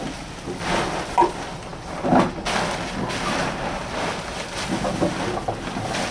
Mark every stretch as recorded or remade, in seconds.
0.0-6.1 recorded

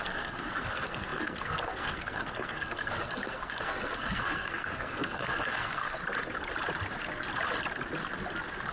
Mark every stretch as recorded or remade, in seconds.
0.0-6.0 remade; 6.0-8.7 recorded

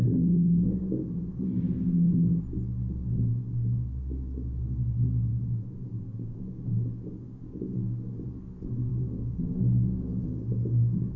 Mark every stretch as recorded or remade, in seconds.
0.0-5.3 recorded; 5.3-6.6 remade; 6.6-8.9 recorded; 8.9-9.6 remade; 9.6-11.2 recorded

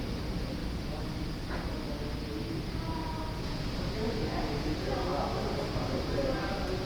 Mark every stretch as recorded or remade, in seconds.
0.0-6.9 recorded